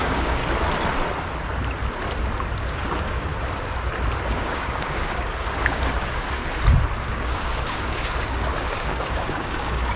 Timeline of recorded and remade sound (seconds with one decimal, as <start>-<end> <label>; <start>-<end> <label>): 0.0-0.4 remade; 0.4-2.6 recorded; 2.6-3.3 remade; 3.3-4.3 recorded; 4.3-6.4 remade; 6.4-7.0 recorded; 7.0-10.0 remade